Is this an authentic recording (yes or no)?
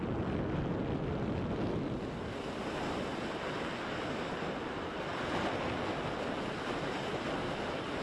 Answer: yes